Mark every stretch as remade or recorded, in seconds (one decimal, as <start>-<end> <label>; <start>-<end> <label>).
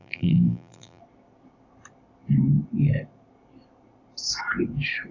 0.0-1.0 remade; 1.0-5.1 recorded